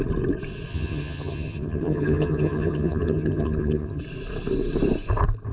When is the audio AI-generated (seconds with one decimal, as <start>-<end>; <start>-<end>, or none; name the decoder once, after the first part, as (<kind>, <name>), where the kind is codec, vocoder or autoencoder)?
0.7-4.0 (vocoder, HiFi-GAN)